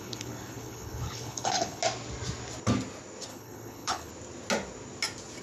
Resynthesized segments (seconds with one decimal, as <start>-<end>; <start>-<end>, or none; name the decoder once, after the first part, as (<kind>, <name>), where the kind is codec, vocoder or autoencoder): 0.0-1.8 (codec, HILCodec); 3.3-4.1